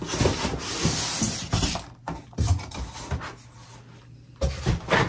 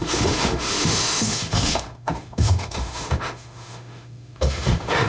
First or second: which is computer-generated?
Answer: second